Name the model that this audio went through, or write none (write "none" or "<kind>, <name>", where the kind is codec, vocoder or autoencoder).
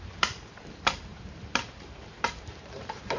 vocoder, BigVGAN v2